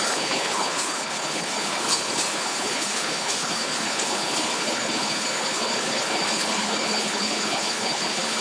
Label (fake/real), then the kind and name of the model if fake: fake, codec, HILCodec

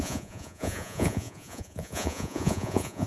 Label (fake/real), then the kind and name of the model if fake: fake, vocoder, Vocos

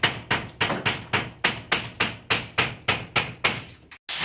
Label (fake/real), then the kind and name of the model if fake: real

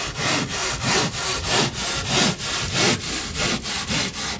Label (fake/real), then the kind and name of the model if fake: real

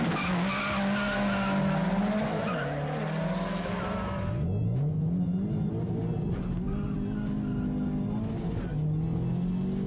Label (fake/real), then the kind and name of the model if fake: real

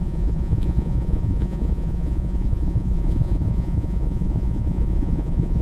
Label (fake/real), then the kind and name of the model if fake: fake, vocoder, Vocos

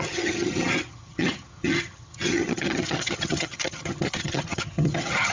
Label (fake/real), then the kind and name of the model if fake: fake, vocoder, HiFi-GAN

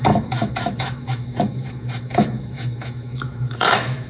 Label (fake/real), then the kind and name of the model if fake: fake, autoencoder, DAC-VAE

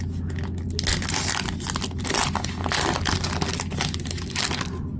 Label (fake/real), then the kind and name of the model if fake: real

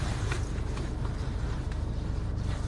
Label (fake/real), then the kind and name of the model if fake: fake, vocoder, BigVGAN v2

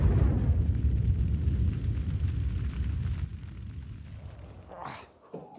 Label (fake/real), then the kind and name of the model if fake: real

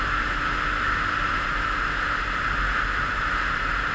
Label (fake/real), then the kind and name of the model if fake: real